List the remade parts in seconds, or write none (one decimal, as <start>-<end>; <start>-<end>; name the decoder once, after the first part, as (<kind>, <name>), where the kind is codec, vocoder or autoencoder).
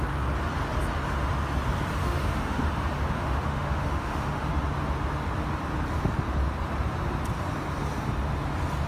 2.0-2.7 (autoencoder, DAC-VAE); 3.2-4.5